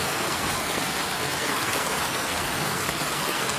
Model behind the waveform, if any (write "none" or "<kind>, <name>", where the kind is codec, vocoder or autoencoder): codec, SNAC